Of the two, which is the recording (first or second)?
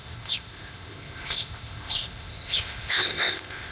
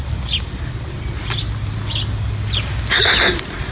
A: second